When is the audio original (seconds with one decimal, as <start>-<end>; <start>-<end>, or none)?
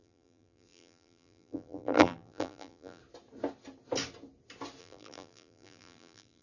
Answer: 3.0-4.8